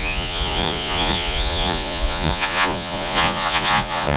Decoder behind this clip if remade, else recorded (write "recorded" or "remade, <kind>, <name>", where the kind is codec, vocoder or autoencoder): remade, vocoder, Vocos